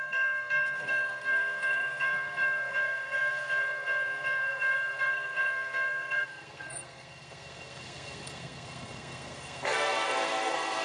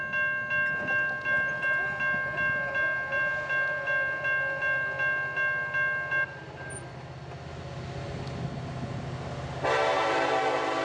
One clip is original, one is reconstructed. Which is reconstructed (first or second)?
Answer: first